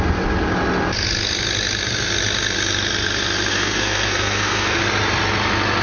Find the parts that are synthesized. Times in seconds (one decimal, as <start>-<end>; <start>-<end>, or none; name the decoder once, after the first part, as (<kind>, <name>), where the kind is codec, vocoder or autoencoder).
3.5-4.8 (codec, SNAC)